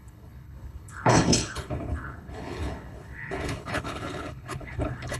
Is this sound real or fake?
fake